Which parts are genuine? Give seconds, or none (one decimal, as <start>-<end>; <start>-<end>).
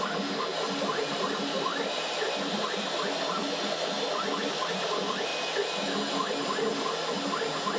0.0-7.8